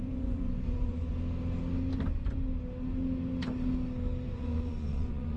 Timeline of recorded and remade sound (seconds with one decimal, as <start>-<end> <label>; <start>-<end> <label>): 0.0-1.1 remade; 1.1-4.3 recorded; 4.3-5.4 remade